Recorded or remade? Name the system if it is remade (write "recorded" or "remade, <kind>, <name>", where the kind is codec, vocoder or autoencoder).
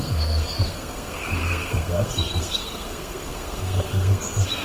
remade, codec, SNAC